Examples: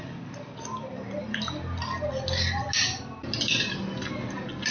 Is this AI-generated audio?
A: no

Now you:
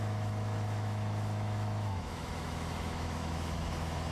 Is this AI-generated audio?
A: yes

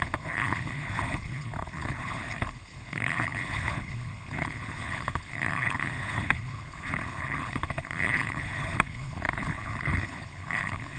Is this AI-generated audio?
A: yes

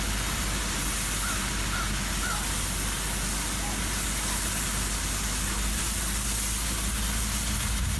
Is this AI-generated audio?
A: no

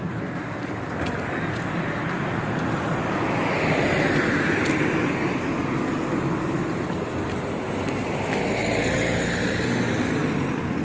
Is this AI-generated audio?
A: no